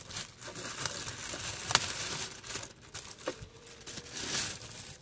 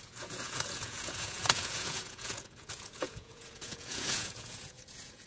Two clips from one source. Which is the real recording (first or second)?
first